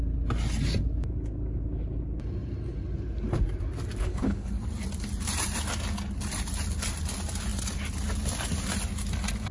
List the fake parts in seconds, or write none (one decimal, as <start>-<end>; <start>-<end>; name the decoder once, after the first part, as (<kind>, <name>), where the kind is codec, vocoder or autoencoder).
4.0-4.5 (codec, HILCodec)